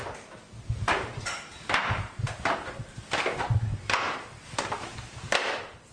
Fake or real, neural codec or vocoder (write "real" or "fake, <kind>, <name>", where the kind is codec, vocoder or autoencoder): real